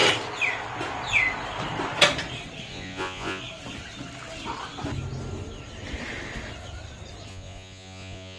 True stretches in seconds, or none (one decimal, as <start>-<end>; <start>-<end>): 0.0-2.7; 3.4-7.3